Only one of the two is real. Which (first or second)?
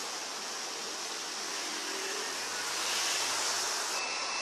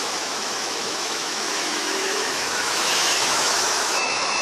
first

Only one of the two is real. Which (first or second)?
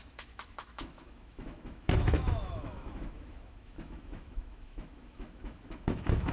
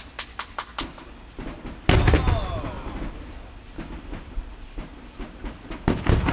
second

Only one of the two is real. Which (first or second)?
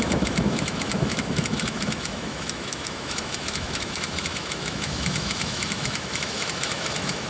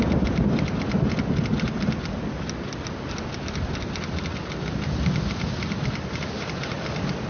second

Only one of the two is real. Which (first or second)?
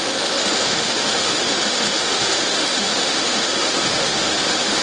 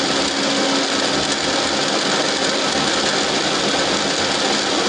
second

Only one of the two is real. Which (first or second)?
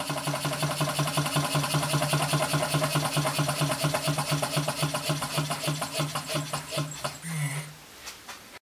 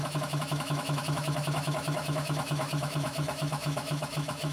first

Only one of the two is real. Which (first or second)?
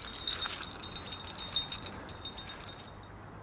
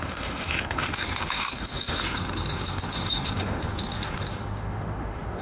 first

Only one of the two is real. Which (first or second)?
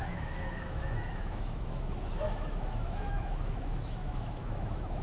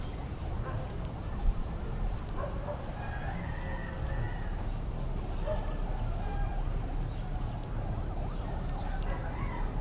second